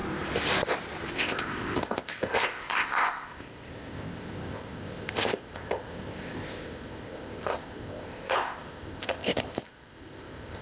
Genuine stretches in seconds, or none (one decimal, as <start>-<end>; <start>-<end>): 0.0-1.1